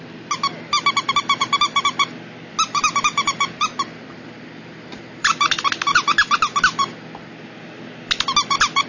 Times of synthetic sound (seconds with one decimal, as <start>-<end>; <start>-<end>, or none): none